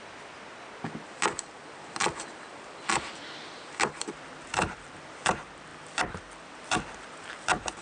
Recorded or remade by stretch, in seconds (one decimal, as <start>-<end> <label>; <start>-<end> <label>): 0.0-4.5 recorded; 4.5-5.2 remade; 5.2-5.7 recorded; 5.7-7.8 remade